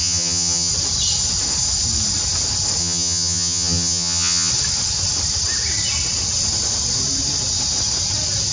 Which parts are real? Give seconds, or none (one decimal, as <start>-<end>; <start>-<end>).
0.7-2.8; 4.5-8.5